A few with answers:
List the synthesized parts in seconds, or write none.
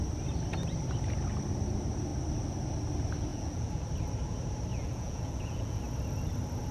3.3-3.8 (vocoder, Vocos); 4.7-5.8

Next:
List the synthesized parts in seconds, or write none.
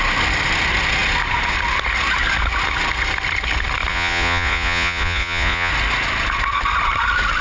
3.9-5.7 (vocoder, Vocos)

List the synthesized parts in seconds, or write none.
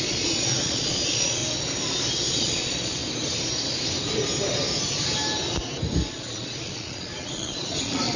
0.0-1.4 (vocoder, Vocos); 2.3-3.0; 6.1-8.2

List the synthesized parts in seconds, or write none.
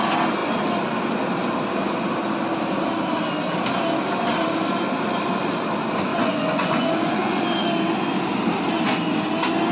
6.1-7.4 (vocoder, Vocos)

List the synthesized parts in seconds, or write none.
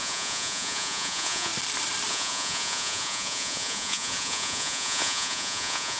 0.0-1.5 (vocoder, Vocos); 2.1-6.0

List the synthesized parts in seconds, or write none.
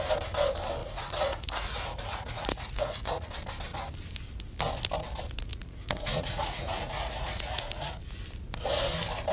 0.8-3.3 (vocoder, Vocos); 5.5-8.0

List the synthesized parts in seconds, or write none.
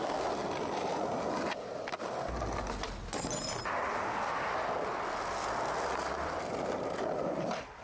none